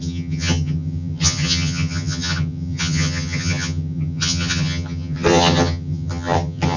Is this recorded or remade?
remade